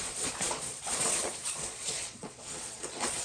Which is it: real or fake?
fake